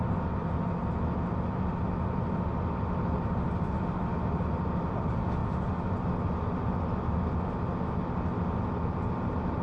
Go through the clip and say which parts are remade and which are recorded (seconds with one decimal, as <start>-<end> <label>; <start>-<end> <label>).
0.0-9.6 recorded